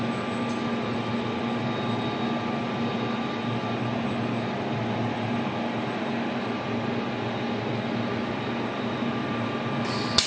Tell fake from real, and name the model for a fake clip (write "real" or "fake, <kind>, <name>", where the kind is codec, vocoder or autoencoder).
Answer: real